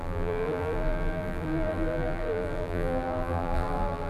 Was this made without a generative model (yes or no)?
no